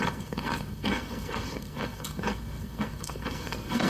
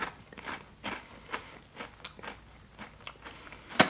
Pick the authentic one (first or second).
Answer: second